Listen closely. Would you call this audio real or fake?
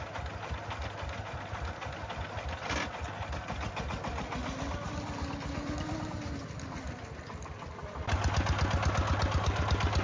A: real